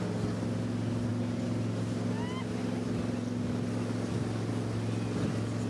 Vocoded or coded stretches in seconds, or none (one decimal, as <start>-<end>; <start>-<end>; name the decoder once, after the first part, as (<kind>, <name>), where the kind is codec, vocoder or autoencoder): none